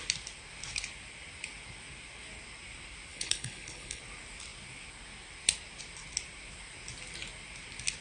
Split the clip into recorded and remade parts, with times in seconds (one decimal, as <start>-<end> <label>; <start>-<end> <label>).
0.0-3.1 recorded; 3.1-4.0 remade; 4.0-8.0 recorded